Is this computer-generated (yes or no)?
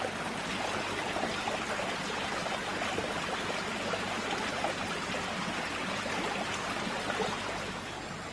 no